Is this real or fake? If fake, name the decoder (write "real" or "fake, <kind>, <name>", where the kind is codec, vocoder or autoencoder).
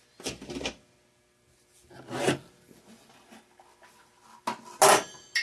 real